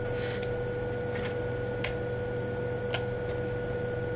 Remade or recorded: recorded